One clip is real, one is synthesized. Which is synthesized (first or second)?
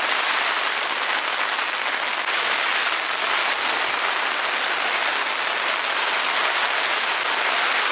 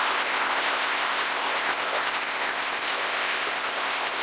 second